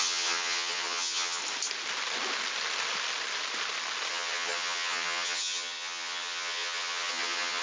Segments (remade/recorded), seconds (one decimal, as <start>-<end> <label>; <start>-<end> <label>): 0.0-1.4 remade; 1.4-4.1 recorded; 4.1-7.6 remade